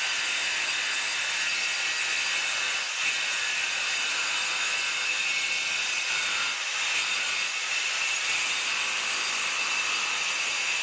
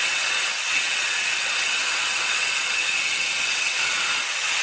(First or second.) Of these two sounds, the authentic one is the first